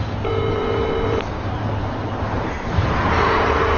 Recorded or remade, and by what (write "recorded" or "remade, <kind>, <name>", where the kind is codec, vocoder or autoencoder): remade, vocoder, BigVGAN v2